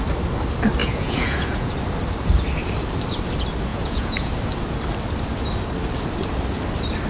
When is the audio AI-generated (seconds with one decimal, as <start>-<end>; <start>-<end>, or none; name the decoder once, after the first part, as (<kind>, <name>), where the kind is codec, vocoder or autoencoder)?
0.8-1.7 (vocoder, Vocos); 3.7-4.3